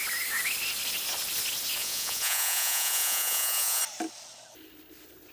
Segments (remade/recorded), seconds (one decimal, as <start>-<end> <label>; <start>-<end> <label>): 0.0-1.8 recorded; 1.8-3.8 remade; 3.8-5.3 recorded